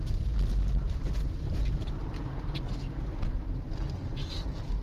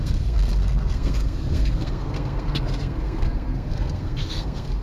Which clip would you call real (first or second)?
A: first